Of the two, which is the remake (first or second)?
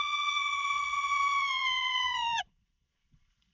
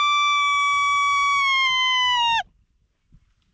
first